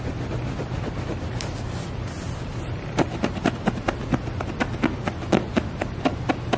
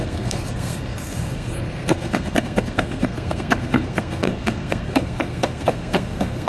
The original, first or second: first